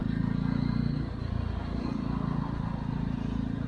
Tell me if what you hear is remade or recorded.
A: recorded